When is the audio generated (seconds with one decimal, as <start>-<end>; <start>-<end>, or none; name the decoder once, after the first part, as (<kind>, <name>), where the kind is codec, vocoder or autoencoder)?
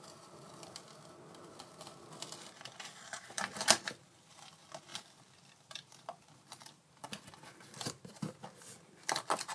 4.9-8.2 (vocoder, BigVGAN v2)